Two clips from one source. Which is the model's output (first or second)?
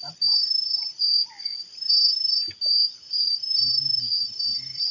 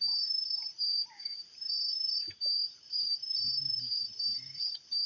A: second